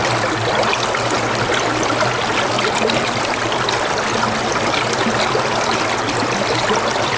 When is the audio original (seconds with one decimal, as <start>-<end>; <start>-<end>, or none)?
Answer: 0.0-7.2